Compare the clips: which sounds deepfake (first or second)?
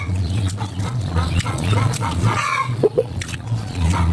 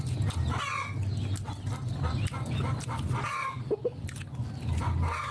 first